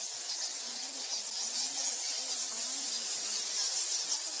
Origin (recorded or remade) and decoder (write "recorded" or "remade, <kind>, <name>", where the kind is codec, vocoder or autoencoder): recorded